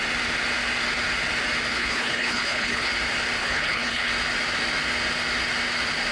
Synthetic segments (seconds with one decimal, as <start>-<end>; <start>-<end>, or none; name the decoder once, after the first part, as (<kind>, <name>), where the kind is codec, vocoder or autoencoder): 1.7-2.9 (codec, HILCodec); 3.4-4.1